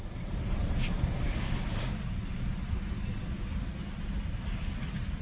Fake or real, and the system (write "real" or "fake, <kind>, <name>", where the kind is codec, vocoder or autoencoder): real